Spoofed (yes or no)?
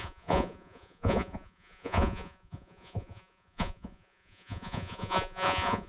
yes